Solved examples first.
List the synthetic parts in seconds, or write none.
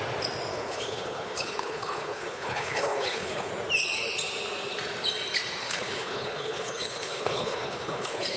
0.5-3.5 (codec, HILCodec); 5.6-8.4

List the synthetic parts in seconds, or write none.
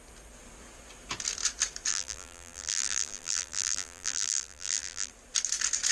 1.9-5.1 (vocoder, BigVGAN v2)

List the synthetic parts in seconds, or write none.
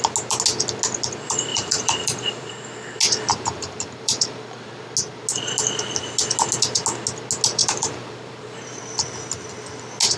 1.5-2.5 (vocoder, BigVGAN v2); 3.3-4.8; 7.6-8.8